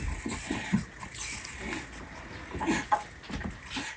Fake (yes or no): no